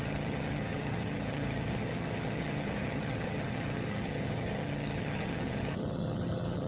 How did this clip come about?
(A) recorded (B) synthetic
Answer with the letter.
B